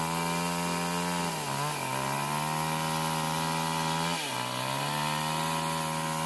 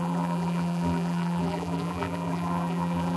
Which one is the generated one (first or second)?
second